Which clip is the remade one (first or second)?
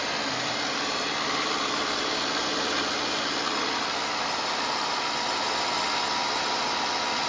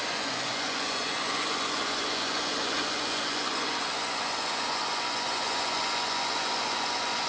second